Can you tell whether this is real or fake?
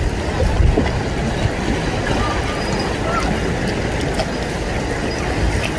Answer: real